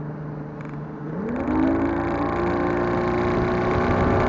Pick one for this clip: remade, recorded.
recorded